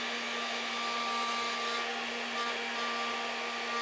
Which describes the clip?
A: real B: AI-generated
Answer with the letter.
A